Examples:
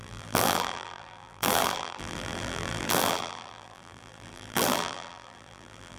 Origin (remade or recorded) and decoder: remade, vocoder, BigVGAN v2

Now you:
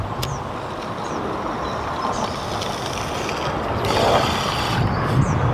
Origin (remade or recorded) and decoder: recorded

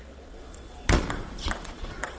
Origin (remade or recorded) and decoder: remade, vocoder, Vocos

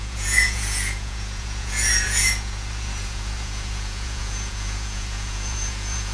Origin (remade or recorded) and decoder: remade, vocoder, Vocos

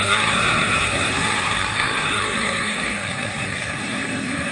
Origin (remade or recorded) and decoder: remade, codec, SNAC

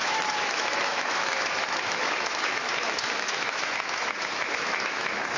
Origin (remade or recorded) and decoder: remade, autoencoder, DAC-VAE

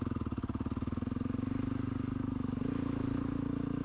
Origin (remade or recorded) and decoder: recorded